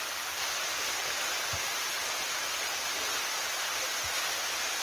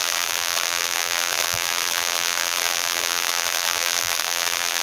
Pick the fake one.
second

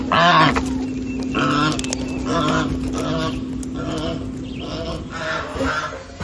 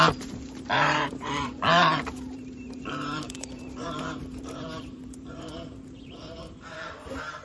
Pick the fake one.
second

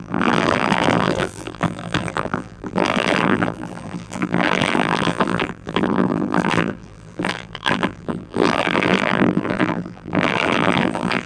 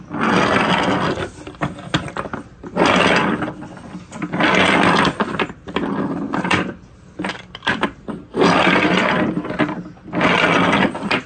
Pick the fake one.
first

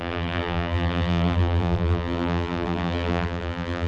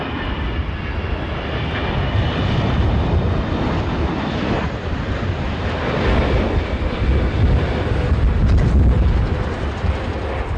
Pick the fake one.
first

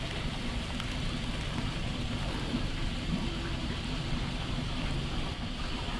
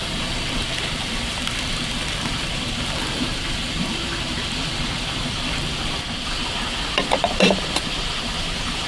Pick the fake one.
second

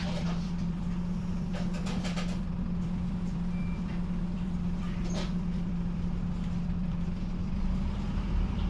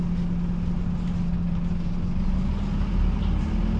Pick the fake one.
first